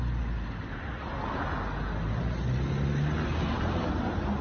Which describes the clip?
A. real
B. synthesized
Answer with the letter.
A